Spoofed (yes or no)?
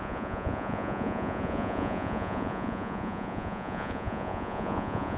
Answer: yes